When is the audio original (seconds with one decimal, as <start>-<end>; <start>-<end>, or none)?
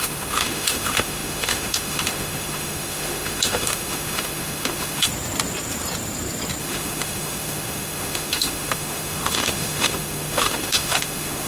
5.1-6.6